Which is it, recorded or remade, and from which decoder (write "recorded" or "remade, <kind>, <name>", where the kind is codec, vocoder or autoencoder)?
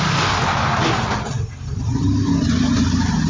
recorded